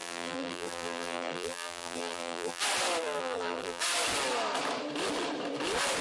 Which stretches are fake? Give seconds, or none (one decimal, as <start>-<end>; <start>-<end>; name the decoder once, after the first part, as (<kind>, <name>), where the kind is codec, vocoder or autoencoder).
0.0-2.6 (vocoder, BigVGAN v2); 3.0-3.8